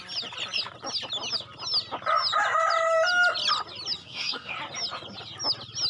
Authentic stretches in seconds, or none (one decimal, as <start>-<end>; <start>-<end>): 0.0-4.0; 4.5-5.9